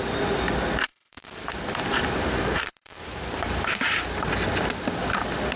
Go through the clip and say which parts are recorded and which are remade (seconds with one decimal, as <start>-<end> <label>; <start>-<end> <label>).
0.0-0.9 recorded; 0.9-4.3 remade; 4.3-5.6 recorded